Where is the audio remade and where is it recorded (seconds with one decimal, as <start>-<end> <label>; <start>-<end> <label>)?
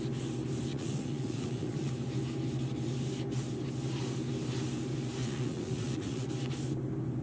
0.0-0.7 recorded; 0.7-1.9 remade; 1.9-5.2 recorded; 5.2-6.3 remade; 6.3-7.2 recorded